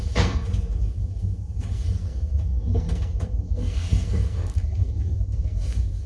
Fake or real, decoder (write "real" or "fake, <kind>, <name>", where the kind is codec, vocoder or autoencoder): fake, codec, SNAC